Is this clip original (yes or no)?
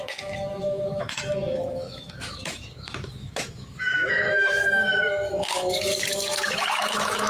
no